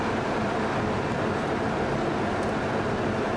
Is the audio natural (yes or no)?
yes